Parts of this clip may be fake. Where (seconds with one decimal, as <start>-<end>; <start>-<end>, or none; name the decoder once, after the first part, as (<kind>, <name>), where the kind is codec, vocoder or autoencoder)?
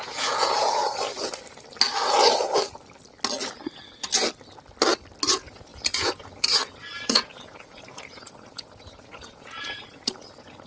0.0-0.8 (vocoder, Vocos); 5.3-10.7